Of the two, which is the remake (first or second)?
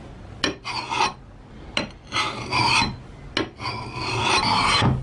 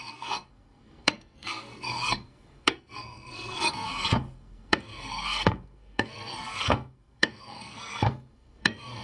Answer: second